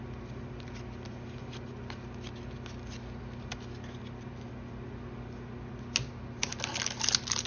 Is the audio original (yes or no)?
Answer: yes